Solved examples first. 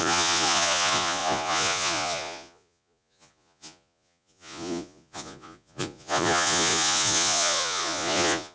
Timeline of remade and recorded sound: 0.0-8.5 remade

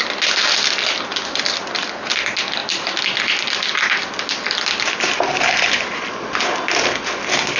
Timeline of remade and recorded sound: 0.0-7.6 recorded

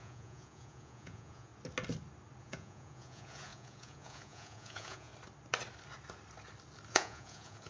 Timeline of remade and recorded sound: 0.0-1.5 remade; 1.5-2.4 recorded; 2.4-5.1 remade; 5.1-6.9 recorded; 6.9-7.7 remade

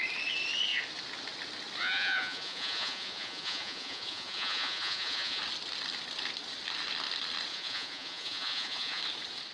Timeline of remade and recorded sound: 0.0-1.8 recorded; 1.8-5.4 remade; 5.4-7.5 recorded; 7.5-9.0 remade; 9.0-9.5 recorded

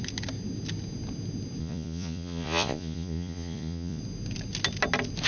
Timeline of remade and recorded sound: 0.0-1.6 recorded; 1.6-4.0 remade; 4.0-5.3 recorded

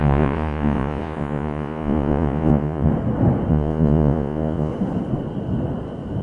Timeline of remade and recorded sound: 0.0-2.9 remade; 2.9-3.5 recorded; 3.5-4.7 remade; 4.7-6.2 recorded